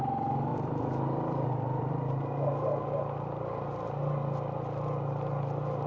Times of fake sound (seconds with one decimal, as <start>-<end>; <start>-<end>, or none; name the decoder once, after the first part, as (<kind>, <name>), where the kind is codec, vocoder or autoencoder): 0.5-1.9 (vocoder, BigVGAN v2)